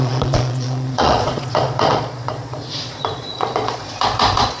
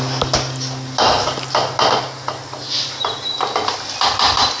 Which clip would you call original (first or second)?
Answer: second